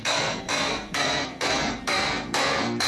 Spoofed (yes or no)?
yes